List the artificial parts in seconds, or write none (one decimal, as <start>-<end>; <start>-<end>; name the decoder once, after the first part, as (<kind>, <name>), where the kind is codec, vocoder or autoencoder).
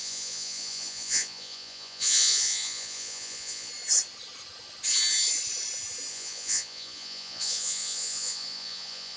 0.0-3.7 (vocoder, Vocos); 6.1-9.2